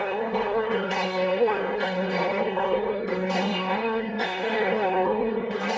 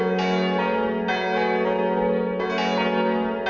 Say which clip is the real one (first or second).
second